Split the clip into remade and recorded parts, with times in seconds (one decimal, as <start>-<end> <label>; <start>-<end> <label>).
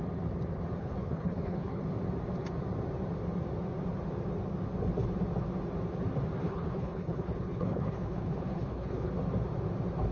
0.0-0.8 recorded; 0.8-1.8 remade; 1.8-6.4 recorded; 6.4-9.1 remade; 9.1-10.1 recorded